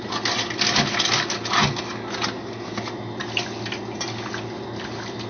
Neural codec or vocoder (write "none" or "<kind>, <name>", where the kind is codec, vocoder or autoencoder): none